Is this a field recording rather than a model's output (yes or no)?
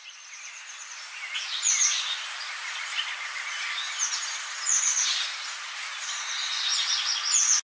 yes